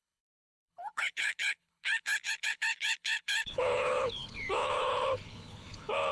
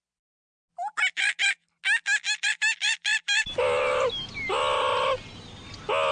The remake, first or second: first